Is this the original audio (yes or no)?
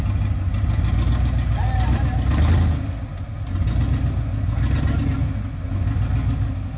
yes